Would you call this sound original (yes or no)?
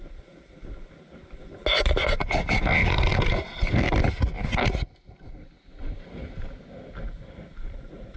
yes